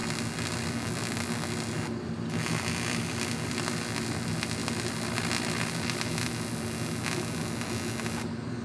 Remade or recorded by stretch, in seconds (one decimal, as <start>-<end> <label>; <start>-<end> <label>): 0.0-8.6 recorded